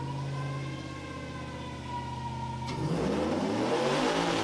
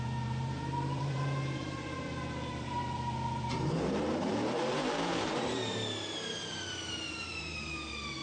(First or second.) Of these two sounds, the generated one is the second